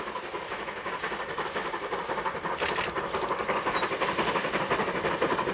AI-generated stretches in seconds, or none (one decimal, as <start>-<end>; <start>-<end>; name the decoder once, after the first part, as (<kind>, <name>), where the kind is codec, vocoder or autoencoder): none